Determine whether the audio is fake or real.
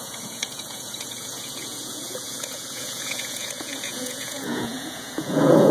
fake